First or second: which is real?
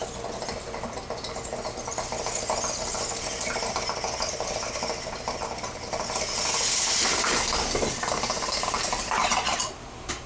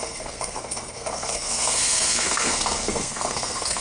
first